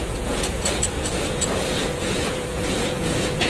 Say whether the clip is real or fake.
fake